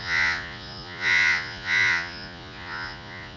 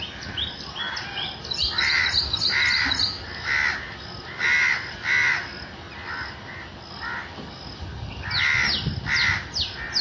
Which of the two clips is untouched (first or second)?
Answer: second